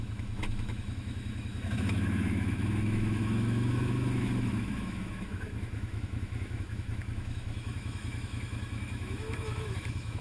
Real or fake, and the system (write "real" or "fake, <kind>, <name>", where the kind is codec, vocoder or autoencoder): fake, autoencoder, DAC-VAE